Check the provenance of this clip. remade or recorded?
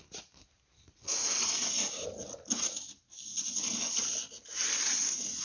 recorded